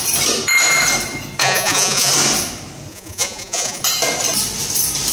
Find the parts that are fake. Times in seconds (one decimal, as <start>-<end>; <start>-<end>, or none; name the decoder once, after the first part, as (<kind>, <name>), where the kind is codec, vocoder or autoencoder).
1.4-2.1 (vocoder, Vocos); 2.9-3.8